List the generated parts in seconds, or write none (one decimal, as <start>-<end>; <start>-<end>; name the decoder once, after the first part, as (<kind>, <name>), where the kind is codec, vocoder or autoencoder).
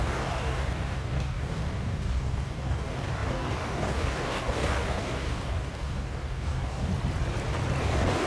0.0-6.9 (codec, DAC); 7.8-8.3